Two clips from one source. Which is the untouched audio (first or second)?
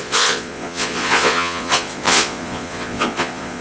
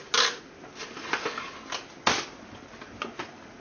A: second